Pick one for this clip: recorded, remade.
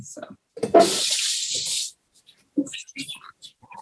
remade